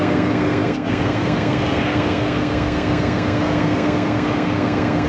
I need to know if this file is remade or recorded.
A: remade